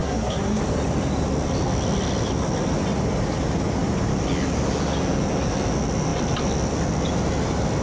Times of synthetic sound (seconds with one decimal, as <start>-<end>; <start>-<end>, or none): 0.0-0.6